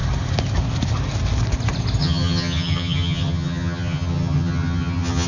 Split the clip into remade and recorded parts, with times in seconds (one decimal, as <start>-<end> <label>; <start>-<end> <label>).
0.0-2.0 recorded; 2.0-5.3 remade